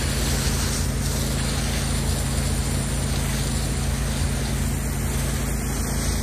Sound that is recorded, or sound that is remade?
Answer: recorded